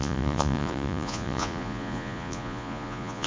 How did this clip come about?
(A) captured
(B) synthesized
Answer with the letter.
B